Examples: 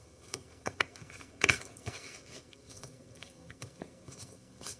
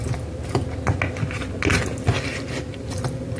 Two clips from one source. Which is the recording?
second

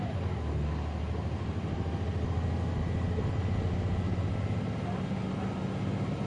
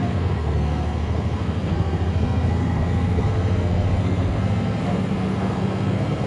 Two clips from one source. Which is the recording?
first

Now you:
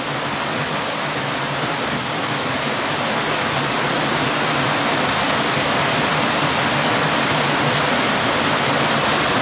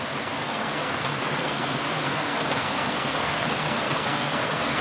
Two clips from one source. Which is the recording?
first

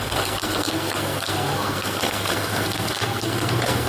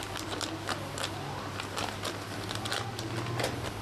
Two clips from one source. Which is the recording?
second